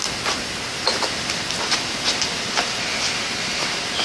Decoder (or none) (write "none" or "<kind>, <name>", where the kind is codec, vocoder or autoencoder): none